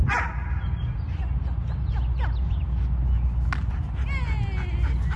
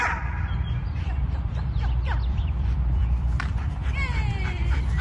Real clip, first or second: first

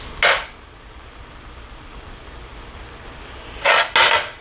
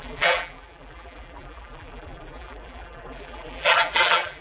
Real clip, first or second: first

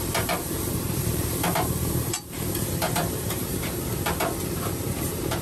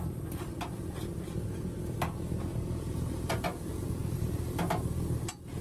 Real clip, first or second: second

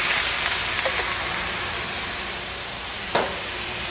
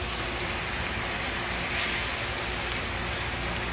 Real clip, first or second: second